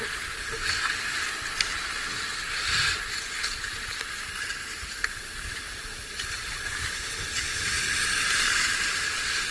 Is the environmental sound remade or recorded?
remade